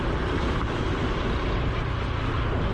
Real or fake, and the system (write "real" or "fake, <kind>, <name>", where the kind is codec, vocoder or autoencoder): real